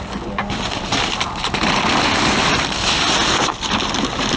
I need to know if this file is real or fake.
fake